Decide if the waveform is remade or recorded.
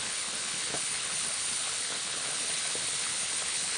remade